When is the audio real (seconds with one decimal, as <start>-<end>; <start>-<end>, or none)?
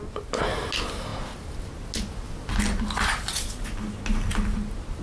0.0-5.0